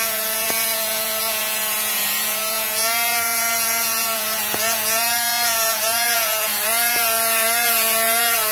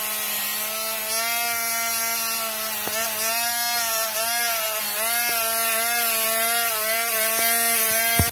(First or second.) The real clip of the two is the second